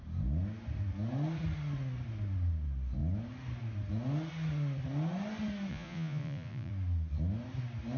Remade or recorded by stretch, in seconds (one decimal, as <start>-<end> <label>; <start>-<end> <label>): 0.0-5.7 recorded; 5.7-6.7 remade; 6.7-8.0 recorded